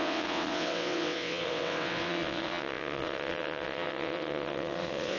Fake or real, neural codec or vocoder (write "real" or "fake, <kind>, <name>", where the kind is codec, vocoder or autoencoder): fake, vocoder, WaveNeXt